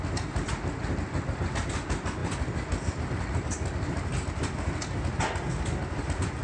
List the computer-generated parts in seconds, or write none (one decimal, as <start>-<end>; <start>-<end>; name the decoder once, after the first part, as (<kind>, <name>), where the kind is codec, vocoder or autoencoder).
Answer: none